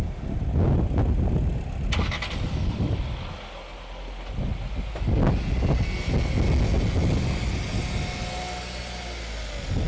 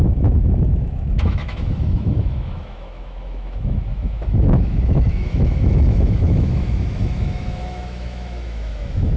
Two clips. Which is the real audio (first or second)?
first